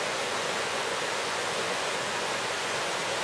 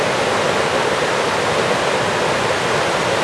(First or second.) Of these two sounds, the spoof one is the first